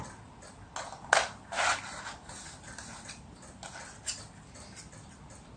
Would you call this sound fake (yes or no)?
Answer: no